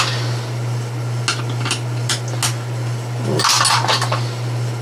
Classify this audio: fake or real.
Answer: real